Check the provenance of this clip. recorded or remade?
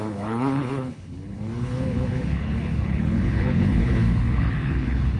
remade